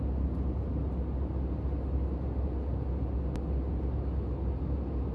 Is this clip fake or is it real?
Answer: real